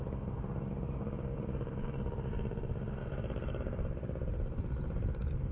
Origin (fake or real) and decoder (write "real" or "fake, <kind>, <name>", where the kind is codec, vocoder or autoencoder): fake, vocoder, BigVGAN v2